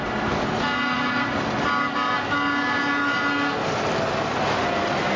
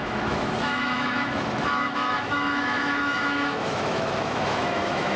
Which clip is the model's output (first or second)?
second